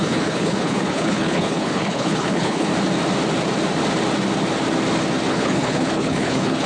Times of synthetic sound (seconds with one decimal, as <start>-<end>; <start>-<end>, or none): 0.0-2.7; 5.3-6.7